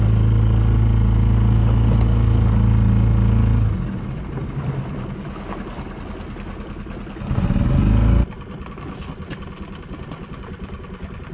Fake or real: real